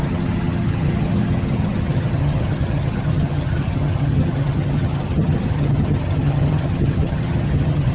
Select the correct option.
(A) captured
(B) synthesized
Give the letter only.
B